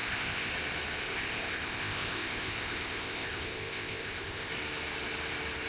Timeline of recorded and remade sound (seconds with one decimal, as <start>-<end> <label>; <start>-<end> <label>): 0.0-0.5 remade; 0.5-1.1 recorded; 1.1-4.5 remade; 4.5-5.7 recorded